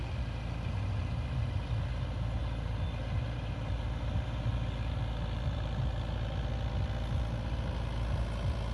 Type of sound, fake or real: real